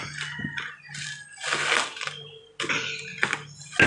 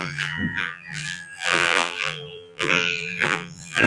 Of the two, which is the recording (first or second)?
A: first